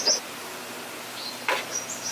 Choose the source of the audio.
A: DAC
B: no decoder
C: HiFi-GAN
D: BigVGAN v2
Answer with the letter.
B